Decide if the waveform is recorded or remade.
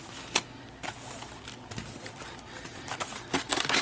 recorded